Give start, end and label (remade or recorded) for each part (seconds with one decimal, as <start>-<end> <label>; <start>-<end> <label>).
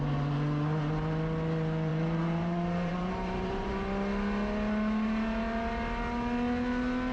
0.0-1.9 recorded; 1.9-3.7 remade; 3.7-7.1 recorded